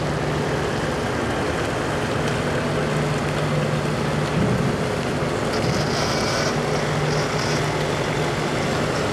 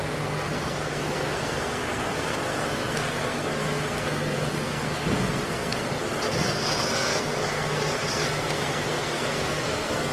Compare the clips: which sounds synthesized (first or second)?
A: second